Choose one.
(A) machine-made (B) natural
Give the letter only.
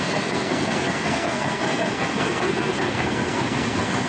A